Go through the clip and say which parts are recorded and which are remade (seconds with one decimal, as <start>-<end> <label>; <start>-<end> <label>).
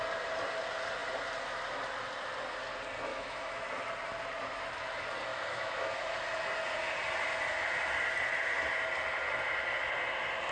0.0-3.1 recorded; 3.1-3.6 remade; 3.6-5.3 recorded; 5.3-6.1 remade; 6.1-10.5 recorded